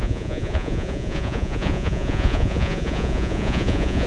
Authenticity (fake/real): fake